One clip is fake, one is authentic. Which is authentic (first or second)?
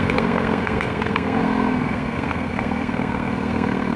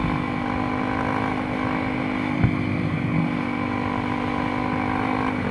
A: second